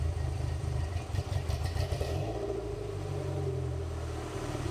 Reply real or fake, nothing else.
fake